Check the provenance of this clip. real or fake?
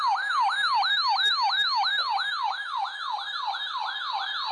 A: real